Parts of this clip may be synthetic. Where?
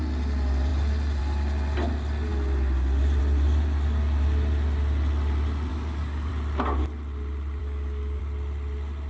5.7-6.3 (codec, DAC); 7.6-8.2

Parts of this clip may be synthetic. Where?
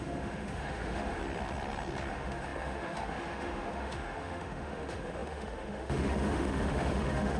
0.0-1.2 (autoencoder, DAC-VAE); 2.1-7.4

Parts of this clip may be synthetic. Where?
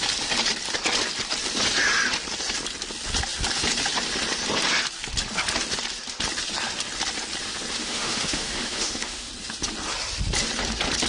7.8-9.3 (autoencoder, DAC-VAE)